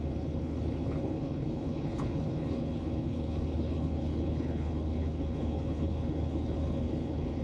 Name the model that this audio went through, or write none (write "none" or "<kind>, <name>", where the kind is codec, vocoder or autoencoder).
codec, HILCodec